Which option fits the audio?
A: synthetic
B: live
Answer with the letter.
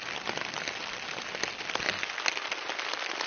B